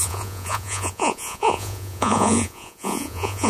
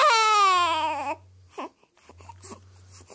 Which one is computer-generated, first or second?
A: first